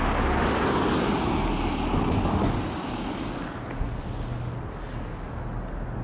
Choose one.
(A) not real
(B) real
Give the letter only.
B